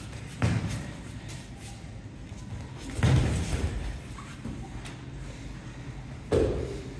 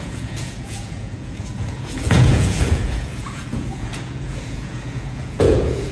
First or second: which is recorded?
first